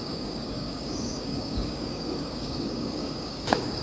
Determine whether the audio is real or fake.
fake